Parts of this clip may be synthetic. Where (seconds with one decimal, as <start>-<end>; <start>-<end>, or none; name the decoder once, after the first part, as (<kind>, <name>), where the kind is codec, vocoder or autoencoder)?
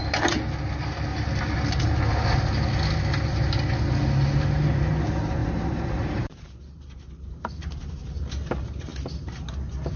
1.1-2.0 (vocoder, BigVGAN v2); 5.4-8.2; 8.9-9.4